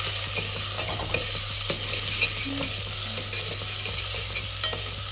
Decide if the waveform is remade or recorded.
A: recorded